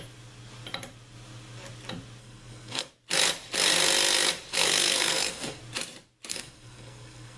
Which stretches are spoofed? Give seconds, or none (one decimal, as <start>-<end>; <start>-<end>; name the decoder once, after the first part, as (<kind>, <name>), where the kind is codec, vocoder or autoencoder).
2.2-2.9 (codec, SNAC); 4.5-5.6; 6.3-7.4